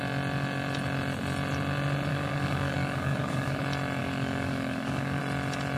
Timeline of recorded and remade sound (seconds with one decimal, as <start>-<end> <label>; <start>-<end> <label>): 0.0-2.1 recorded; 2.1-3.6 remade; 3.6-4.0 recorded; 4.0-5.2 remade; 5.2-5.8 recorded